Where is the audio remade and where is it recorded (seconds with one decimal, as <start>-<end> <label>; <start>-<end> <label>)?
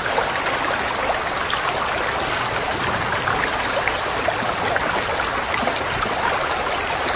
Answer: 0.0-7.2 recorded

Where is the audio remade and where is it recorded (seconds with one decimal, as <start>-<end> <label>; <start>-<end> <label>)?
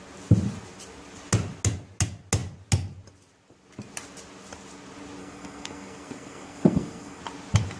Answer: 0.0-5.2 recorded; 5.2-7.2 remade; 7.2-7.8 recorded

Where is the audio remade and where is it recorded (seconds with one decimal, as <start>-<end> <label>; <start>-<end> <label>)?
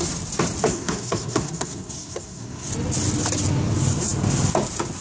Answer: 0.0-0.7 recorded; 0.7-2.7 remade; 2.7-5.0 recorded